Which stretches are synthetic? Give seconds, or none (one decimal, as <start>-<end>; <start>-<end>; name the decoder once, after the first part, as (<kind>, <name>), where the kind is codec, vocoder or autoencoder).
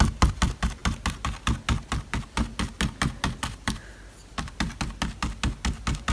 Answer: none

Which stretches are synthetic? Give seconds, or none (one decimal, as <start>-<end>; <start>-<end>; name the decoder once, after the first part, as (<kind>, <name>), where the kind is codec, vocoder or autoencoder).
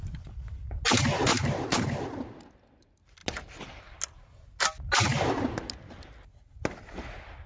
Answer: none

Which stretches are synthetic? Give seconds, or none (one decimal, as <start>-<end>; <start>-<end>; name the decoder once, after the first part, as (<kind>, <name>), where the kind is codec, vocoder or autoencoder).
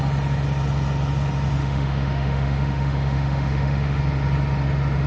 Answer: 1.6-4.0 (autoencoder, DAC-VAE)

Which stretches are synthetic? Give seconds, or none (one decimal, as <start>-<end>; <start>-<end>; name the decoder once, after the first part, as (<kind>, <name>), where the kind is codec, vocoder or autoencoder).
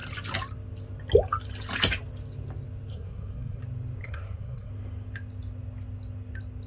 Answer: 2.9-3.6 (codec, SNAC); 4.0-4.7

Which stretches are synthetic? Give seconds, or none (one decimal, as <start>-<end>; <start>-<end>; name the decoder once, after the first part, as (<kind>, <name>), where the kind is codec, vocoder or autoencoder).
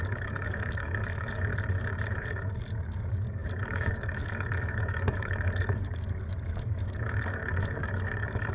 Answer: 0.0-1.5 (codec, DAC); 2.2-8.5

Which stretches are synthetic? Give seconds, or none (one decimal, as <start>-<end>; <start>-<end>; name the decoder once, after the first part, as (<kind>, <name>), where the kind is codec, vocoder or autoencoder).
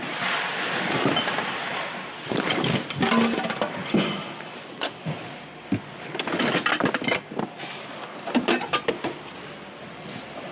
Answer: none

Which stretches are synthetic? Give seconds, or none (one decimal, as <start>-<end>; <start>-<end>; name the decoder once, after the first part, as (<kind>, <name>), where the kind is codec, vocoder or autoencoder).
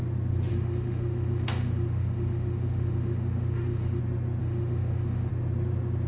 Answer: 0.5-4.0 (autoencoder, DAC-VAE); 4.4-5.3